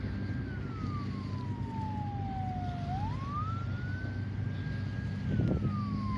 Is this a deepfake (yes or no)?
no